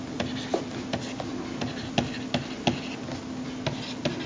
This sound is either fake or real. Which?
real